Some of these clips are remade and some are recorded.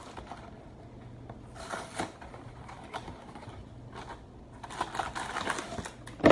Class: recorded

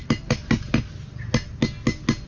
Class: recorded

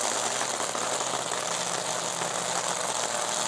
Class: recorded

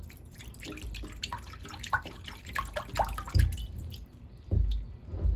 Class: recorded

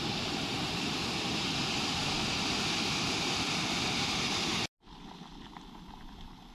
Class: recorded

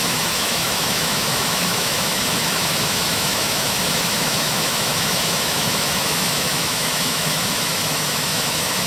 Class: remade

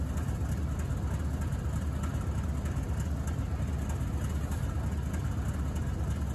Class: recorded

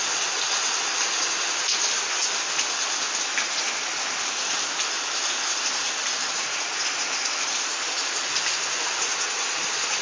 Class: recorded